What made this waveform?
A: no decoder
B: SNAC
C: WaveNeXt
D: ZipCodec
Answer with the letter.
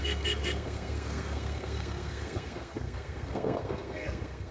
B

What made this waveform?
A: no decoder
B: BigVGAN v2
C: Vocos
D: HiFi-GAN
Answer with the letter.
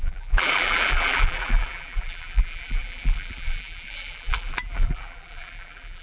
B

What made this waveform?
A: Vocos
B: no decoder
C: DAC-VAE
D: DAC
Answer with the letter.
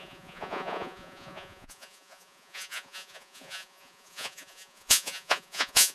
A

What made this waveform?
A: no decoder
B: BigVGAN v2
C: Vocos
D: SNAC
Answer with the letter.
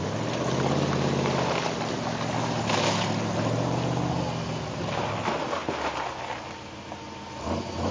A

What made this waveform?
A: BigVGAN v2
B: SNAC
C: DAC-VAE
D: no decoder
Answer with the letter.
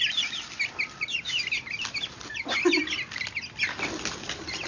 D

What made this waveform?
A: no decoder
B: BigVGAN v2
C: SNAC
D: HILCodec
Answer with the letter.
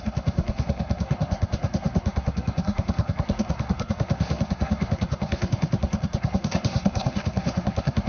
C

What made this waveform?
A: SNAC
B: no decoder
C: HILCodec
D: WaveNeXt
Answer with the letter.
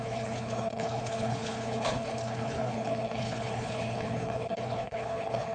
C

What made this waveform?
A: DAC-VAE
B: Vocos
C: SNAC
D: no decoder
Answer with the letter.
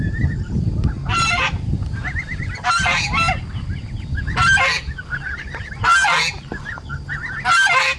D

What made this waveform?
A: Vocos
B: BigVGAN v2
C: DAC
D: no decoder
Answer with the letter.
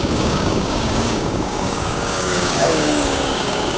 C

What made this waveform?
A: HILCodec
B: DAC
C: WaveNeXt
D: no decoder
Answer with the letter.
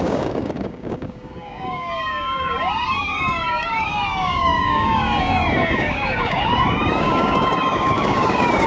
B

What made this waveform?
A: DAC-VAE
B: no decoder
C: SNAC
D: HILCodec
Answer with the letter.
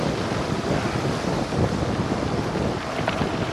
B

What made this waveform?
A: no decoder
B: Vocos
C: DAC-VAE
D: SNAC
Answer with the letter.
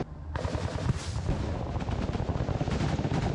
A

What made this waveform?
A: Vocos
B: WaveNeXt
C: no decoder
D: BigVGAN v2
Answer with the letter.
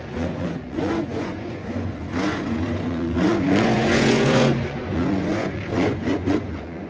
A